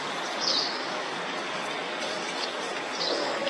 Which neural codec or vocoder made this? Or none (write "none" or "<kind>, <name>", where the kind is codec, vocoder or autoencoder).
codec, DAC